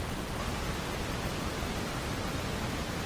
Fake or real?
real